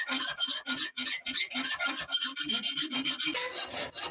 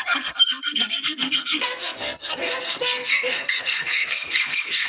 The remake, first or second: second